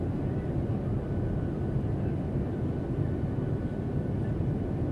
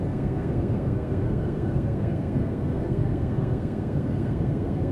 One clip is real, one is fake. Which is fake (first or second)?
second